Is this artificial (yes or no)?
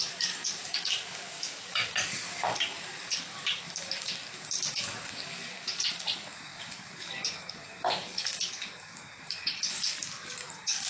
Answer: yes